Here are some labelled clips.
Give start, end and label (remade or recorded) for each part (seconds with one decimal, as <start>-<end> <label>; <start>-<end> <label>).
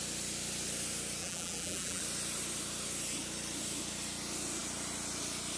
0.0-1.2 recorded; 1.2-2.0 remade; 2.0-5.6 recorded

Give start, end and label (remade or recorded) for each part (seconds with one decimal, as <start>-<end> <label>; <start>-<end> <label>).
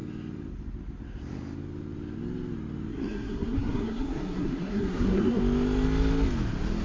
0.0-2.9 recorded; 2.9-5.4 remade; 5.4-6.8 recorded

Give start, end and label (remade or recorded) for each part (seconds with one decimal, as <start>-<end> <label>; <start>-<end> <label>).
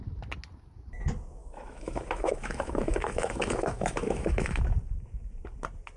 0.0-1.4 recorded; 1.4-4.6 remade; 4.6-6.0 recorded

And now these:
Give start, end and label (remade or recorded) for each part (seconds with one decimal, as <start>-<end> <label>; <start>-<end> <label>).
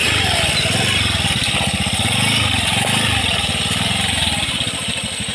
0.0-5.3 recorded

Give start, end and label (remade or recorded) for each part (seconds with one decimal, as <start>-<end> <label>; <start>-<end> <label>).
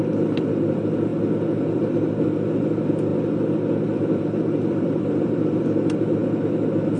0.0-1.1 remade; 1.1-2.1 recorded; 2.1-3.1 remade; 3.1-4.0 recorded; 4.0-6.2 remade; 6.2-7.0 recorded